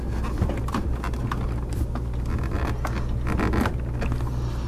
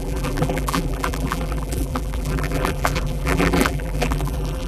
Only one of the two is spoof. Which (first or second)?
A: second